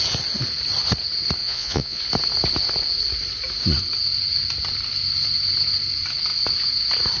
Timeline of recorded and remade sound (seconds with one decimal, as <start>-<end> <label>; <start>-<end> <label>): 0.0-1.4 recorded; 1.4-2.0 remade; 2.0-7.2 recorded